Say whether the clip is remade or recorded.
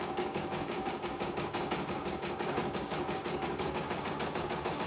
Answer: remade